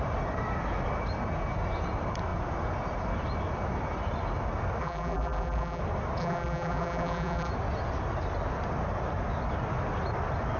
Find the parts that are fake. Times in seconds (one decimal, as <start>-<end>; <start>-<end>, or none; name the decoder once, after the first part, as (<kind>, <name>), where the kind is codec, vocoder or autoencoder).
4.8-5.8 (vocoder, BigVGAN v2); 6.2-7.5